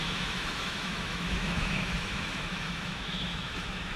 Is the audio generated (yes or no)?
yes